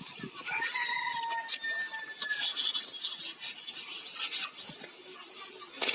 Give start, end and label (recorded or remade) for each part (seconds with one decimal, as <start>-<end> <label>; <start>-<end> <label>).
0.0-5.9 recorded